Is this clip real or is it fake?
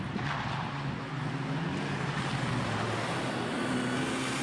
real